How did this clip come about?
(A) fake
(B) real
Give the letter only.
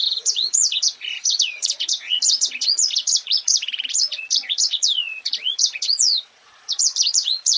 A